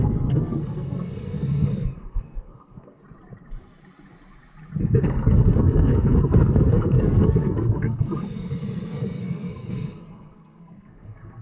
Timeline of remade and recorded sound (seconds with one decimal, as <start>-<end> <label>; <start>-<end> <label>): 0.0-3.0 remade; 3.0-4.8 recorded; 4.8-11.4 remade